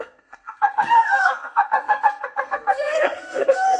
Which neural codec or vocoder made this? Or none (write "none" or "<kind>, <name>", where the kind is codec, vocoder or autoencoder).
codec, SNAC